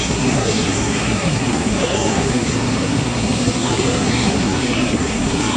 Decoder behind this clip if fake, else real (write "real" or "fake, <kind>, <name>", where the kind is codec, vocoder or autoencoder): fake, codec, SNAC